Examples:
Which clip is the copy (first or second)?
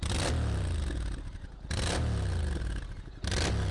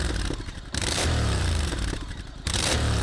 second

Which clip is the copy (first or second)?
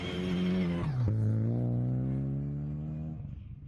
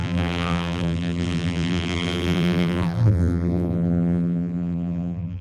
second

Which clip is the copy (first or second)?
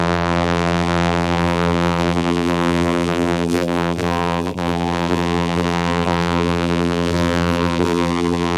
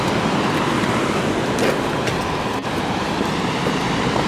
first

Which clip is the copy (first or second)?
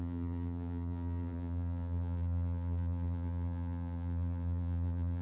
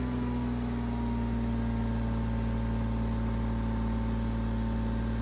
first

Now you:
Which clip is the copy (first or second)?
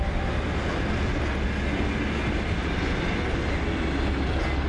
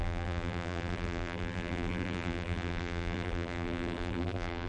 second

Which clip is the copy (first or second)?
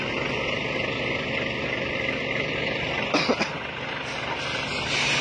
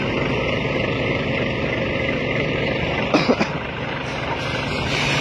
second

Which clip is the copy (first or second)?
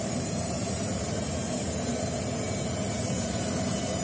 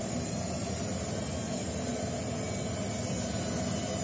first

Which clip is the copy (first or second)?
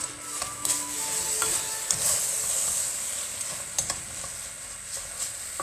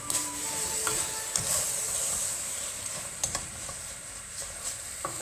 second